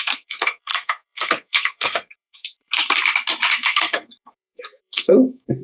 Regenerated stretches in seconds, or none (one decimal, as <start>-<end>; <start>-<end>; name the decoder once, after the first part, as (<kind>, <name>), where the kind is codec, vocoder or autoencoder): 0.0-2.8 (codec, SNAC); 3.5-5.6